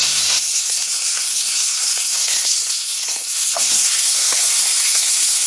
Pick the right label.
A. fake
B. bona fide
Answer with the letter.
A